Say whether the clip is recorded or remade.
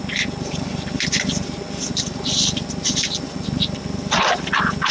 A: recorded